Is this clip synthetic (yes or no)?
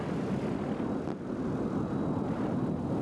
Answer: no